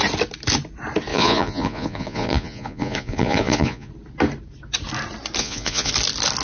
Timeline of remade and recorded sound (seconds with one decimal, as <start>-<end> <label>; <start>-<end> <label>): 0.0-1.1 recorded; 1.1-3.9 remade; 3.9-5.4 recorded; 5.4-5.9 remade; 5.9-6.4 recorded

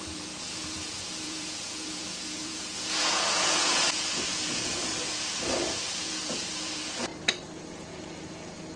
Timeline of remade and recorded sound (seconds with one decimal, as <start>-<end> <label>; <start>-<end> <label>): 0.0-7.1 remade; 7.1-7.7 recorded; 7.7-8.8 remade

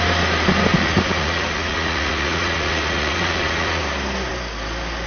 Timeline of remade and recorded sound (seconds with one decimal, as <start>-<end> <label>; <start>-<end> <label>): 0.0-0.7 recorded; 0.7-3.8 remade; 3.8-5.1 recorded

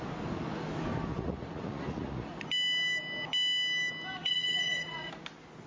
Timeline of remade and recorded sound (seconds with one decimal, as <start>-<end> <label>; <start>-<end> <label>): 0.0-1.1 recorded; 1.1-2.4 remade; 2.4-4.2 recorded; 4.2-5.1 remade; 5.1-5.7 recorded

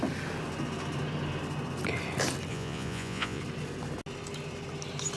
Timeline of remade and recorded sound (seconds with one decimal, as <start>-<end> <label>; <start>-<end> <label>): 0.0-2.5 recorded; 2.5-3.4 remade; 3.4-5.2 recorded

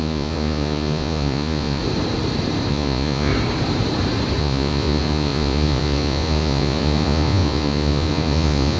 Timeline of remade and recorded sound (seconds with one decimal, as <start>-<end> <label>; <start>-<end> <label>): 0.0-1.8 remade; 1.8-2.7 recorded; 2.7-3.3 remade; 3.3-4.4 recorded; 4.4-8.8 remade